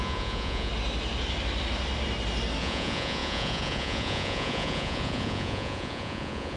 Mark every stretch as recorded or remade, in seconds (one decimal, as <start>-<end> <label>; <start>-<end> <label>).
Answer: 0.0-0.7 remade; 0.7-2.6 recorded; 2.6-6.6 remade